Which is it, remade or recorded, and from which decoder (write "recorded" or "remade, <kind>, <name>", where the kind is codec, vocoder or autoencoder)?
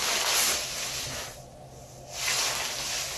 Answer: recorded